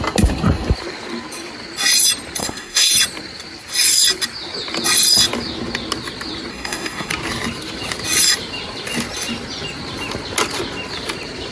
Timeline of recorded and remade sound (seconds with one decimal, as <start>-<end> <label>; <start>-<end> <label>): 0.0-2.4 recorded; 2.4-2.9 remade; 2.9-6.5 recorded; 6.5-7.1 remade; 7.1-11.5 recorded